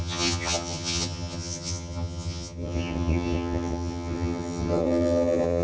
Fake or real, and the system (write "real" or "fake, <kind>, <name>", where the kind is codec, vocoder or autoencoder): fake, vocoder, HiFi-GAN